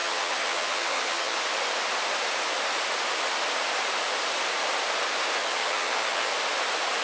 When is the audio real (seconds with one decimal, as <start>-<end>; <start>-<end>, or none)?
1.4-5.4; 6.3-7.0